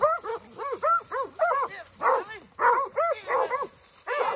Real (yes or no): yes